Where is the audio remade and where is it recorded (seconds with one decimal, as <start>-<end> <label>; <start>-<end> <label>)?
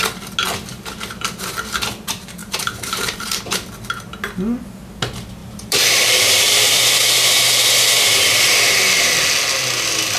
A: 0.0-2.4 recorded; 2.4-3.4 remade; 3.4-5.4 recorded; 5.4-6.6 remade; 6.6-10.2 recorded